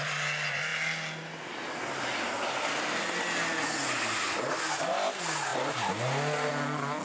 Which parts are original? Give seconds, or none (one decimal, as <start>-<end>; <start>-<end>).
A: 0.0-7.0